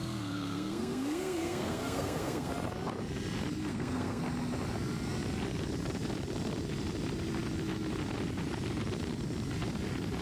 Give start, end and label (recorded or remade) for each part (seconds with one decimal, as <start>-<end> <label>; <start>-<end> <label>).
0.0-2.5 remade; 2.5-3.7 recorded; 3.7-4.2 remade; 4.2-10.2 recorded